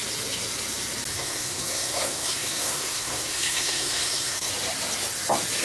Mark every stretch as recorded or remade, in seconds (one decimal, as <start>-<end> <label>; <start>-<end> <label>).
0.0-1.1 recorded; 1.1-4.5 remade; 4.5-5.6 recorded